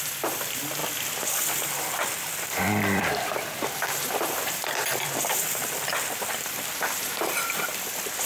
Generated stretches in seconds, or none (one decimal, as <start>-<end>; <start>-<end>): 0.0-8.3